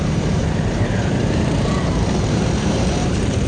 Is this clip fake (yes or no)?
yes